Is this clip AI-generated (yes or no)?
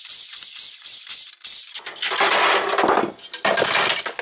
no